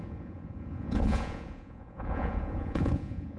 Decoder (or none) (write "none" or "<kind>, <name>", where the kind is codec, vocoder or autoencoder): vocoder, Vocos